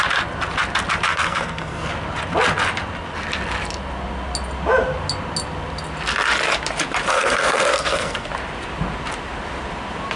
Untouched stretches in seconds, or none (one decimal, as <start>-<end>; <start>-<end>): 0.0-1.1; 1.9-7.1; 8.3-10.2